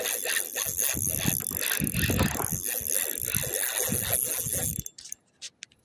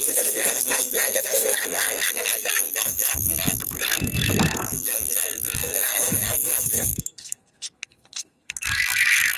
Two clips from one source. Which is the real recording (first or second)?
first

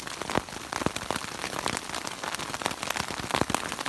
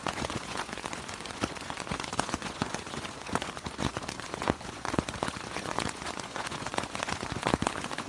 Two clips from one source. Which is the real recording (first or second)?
first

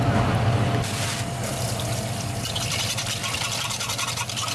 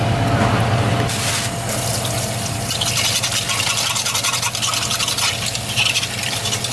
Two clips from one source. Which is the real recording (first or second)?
second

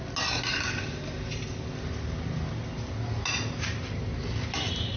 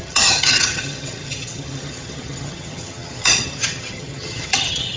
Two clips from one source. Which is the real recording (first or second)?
first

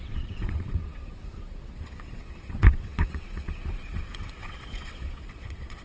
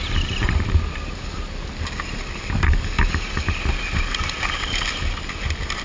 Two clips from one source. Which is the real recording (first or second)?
second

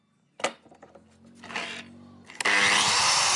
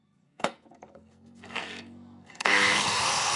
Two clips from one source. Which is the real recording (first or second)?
first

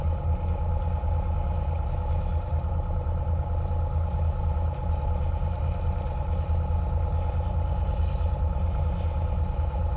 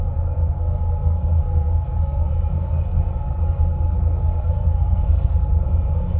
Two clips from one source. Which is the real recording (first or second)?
first